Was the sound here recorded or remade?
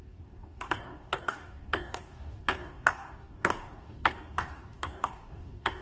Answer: remade